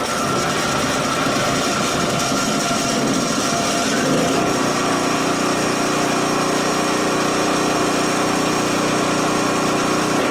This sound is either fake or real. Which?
real